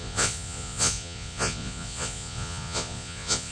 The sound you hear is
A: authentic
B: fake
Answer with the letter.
B